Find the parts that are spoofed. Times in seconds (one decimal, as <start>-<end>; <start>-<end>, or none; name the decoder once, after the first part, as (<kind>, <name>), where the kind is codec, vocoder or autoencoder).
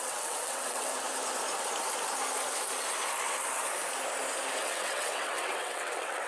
0.0-0.9 (vocoder, WaveNeXt); 4.6-6.3